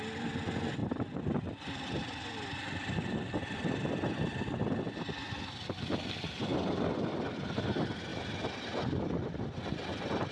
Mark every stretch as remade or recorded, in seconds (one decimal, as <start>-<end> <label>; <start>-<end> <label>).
0.0-0.8 recorded; 0.8-5.3 remade; 5.3-8.1 recorded; 8.1-9.6 remade; 9.6-10.3 recorded